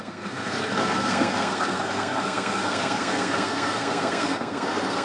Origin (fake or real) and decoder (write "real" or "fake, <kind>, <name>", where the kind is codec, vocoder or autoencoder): fake, codec, SNAC